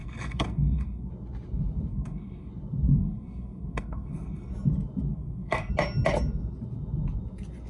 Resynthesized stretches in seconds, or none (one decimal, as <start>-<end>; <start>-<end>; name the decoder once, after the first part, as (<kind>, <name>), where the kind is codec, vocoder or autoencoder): 0.0-1.1 (codec, SNAC); 1.9-2.5; 2.9-4.5; 5.1-5.7